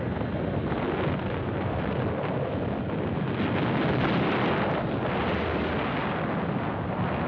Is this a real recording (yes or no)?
yes